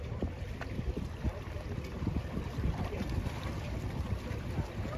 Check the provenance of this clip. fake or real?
fake